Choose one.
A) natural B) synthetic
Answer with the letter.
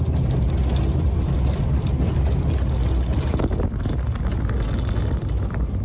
A